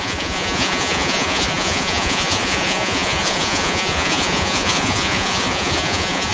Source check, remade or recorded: remade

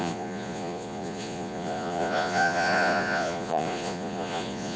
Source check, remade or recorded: remade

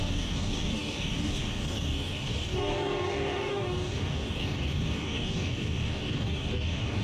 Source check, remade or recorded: remade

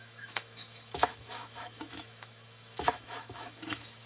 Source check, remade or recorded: remade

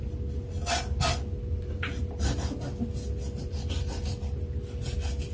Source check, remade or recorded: recorded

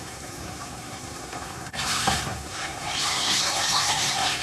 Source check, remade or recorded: remade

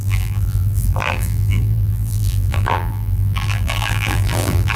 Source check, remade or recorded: remade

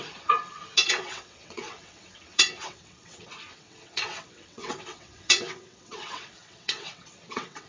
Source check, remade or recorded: remade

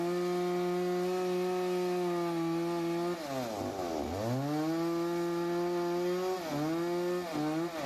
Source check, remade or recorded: recorded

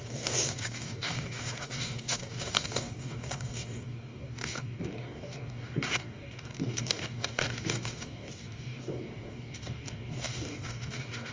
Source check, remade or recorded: remade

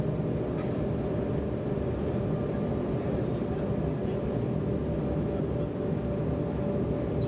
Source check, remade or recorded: recorded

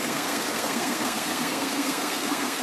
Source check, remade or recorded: remade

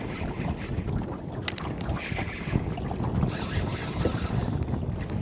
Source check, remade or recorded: recorded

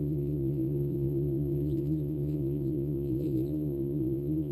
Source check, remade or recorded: remade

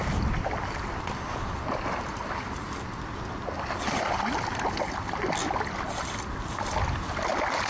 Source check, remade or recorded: recorded